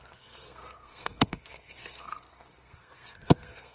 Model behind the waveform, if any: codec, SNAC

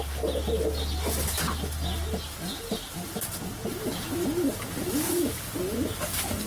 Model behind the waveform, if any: none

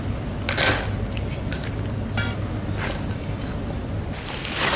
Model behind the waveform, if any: none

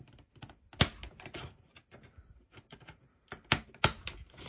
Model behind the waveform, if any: none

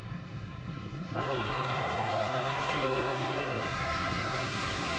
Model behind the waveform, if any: codec, SNAC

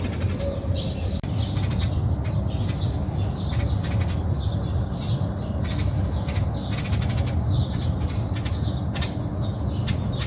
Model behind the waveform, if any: none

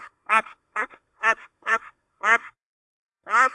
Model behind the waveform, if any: codec, SNAC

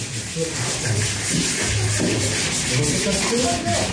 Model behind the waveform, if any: none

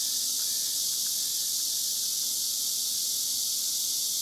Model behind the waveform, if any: none